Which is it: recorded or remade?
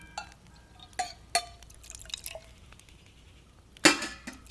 recorded